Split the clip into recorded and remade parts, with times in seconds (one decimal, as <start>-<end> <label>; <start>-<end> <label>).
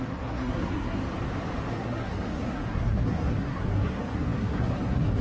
0.0-1.0 remade; 1.0-1.7 recorded; 1.7-5.2 remade